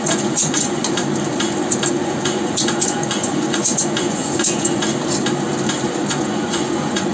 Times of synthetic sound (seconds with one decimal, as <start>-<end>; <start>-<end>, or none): 0.0-0.8; 1.9-4.9; 6.1-7.1